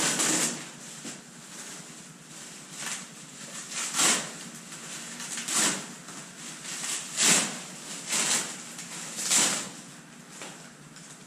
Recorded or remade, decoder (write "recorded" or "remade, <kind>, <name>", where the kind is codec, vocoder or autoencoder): recorded